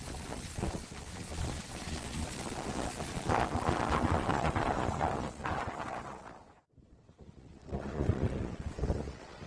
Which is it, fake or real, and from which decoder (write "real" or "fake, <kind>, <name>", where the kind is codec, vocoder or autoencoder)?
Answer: fake, vocoder, Vocos